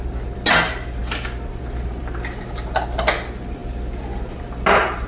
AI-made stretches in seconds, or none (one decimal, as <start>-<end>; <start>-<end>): none